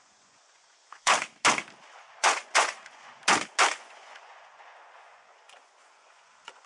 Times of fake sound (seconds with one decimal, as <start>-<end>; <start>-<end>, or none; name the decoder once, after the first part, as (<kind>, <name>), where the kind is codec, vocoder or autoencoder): 0.0-1.1 (vocoder, Vocos); 2.2-3.2; 3.7-6.7